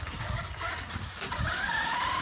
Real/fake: fake